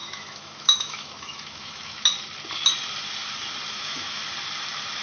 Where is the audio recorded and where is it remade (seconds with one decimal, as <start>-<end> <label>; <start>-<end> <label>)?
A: 0.0-2.1 remade; 2.1-3.7 recorded; 3.7-4.2 remade; 4.2-5.0 recorded